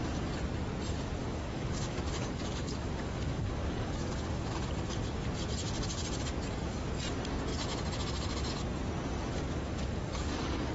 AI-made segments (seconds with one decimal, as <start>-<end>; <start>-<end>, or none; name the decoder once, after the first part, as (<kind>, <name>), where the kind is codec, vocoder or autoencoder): 1.2-4.5 (codec, DAC); 9.3-10.7